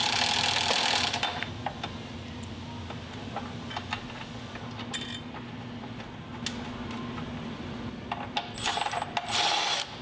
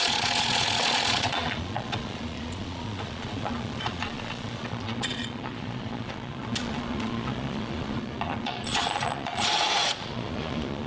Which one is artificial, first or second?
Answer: second